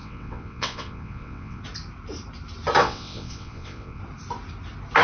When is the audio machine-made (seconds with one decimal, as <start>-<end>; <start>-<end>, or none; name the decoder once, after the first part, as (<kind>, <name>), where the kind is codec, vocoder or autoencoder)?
0.0-1.6 (vocoder, WaveNeXt); 2.8-4.0